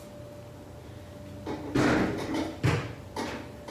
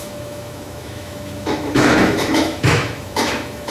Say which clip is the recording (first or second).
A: first